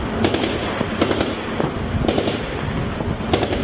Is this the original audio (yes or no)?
yes